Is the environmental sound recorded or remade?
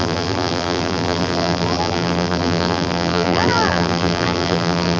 remade